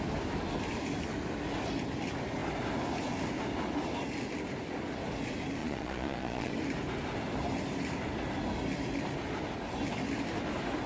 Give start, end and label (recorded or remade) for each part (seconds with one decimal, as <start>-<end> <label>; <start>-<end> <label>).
0.0-5.6 recorded; 5.6-6.5 remade; 6.5-10.9 recorded